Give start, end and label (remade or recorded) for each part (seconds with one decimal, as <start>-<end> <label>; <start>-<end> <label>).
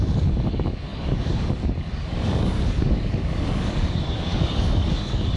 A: 0.0-5.4 remade